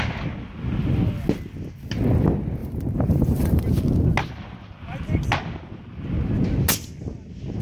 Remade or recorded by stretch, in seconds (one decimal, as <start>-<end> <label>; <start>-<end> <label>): 0.0-2.6 recorded; 2.6-3.7 remade; 3.7-7.6 recorded